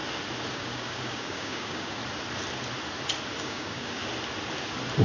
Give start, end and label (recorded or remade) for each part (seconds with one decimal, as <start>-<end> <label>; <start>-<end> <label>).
0.0-0.5 recorded; 0.5-2.0 remade; 2.0-3.4 recorded; 3.4-4.0 remade; 4.0-5.0 recorded